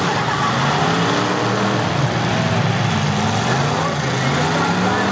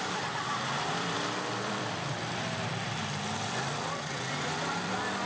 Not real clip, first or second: second